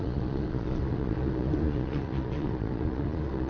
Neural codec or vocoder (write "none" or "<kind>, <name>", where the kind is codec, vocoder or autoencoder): vocoder, Vocos